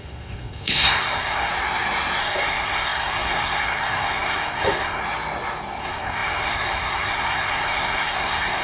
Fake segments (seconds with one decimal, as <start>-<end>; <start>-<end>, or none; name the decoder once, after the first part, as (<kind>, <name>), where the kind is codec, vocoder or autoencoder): 0.0-1.5 (codec, SNAC); 2.2-5.0; 5.8-8.6